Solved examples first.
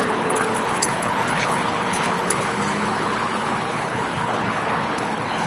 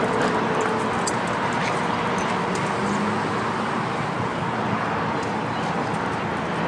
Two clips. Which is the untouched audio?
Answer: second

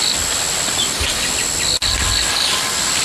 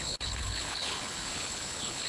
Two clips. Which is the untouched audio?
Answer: first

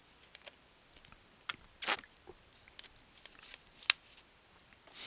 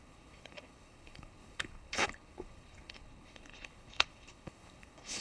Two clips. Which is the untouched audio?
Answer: first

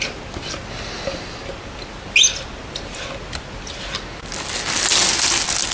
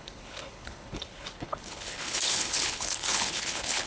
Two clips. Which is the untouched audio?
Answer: first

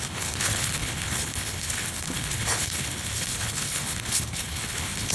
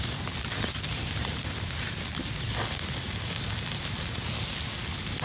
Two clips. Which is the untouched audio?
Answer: second